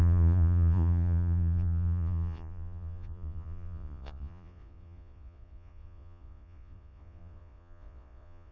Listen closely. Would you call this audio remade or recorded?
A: remade